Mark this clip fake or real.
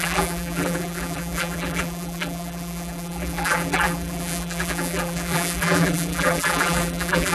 fake